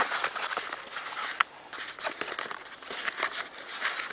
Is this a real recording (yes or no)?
yes